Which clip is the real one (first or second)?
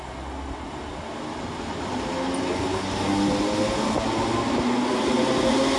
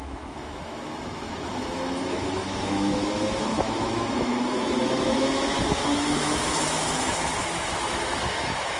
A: first